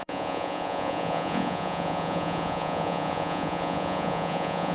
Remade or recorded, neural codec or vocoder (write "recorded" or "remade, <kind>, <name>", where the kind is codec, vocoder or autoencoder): remade, vocoder, Vocos